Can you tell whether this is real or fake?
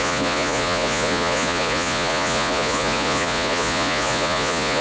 fake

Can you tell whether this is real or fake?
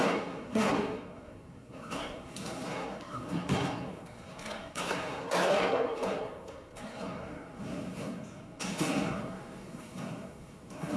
fake